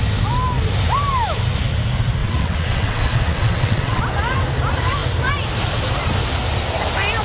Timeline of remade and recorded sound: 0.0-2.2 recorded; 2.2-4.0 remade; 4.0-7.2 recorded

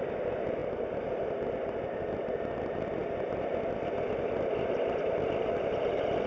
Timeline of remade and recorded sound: 0.0-6.3 recorded

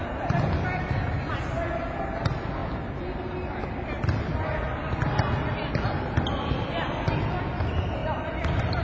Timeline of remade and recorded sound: 0.0-8.8 recorded

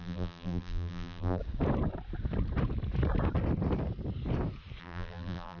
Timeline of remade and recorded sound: 0.0-1.4 remade; 1.4-4.8 recorded; 4.8-5.6 remade

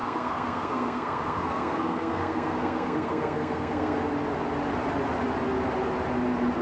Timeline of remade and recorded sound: 0.0-4.0 remade; 4.0-6.6 recorded

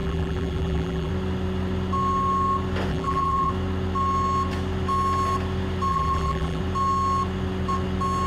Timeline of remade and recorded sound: 0.0-1.1 remade; 1.1-2.9 recorded; 2.9-3.5 remade; 3.5-5.9 recorded; 5.9-6.6 remade; 6.6-8.3 recorded

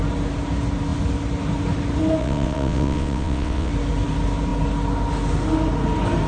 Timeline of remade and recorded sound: 0.0-2.2 recorded; 2.2-3.7 remade; 3.7-6.3 recorded